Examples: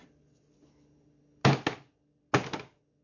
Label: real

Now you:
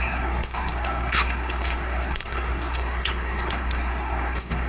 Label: fake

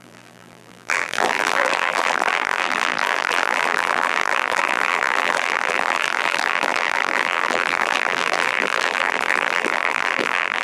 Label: fake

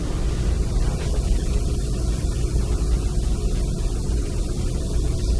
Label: real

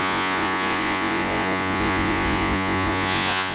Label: fake